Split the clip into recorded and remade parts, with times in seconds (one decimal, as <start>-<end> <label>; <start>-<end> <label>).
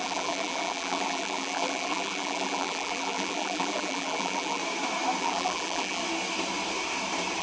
0.0-4.6 remade; 4.6-5.2 recorded; 5.2-6.0 remade; 6.0-7.4 recorded